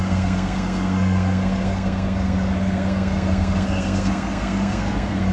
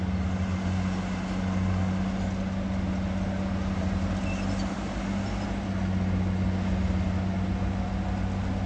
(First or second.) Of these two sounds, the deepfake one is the first